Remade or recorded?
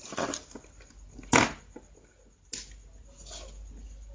recorded